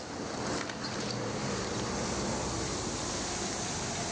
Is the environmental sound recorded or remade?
recorded